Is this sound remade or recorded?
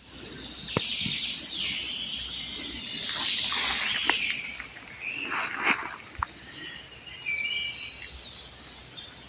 recorded